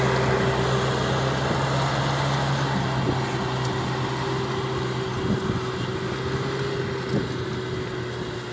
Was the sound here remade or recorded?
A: recorded